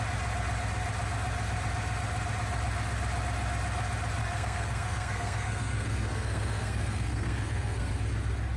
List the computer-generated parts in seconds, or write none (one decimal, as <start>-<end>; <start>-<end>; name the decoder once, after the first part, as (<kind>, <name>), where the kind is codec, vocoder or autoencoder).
4.2-7.9 (codec, SNAC)